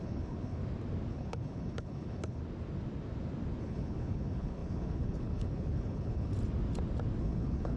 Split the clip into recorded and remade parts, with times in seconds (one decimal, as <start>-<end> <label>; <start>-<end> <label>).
0.0-0.6 remade; 0.6-1.1 recorded; 1.1-2.4 remade; 2.4-3.6 recorded; 3.6-6.3 remade; 6.3-7.2 recorded; 7.2-7.8 remade